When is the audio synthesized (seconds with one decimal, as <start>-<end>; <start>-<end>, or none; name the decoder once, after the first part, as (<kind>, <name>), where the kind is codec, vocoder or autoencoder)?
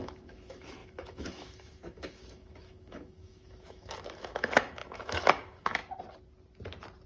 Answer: 0.0-5.8 (autoencoder, DAC-VAE)